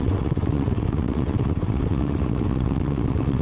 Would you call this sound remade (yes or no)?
yes